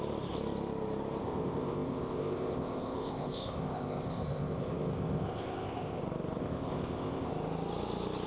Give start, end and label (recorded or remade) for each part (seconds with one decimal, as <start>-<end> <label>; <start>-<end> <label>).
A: 0.0-1.2 recorded; 1.2-6.0 remade; 6.0-6.4 recorded; 6.4-7.3 remade; 7.3-8.3 recorded